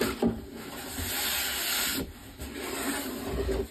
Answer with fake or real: real